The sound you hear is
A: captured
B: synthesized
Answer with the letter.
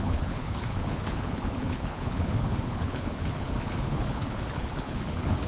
B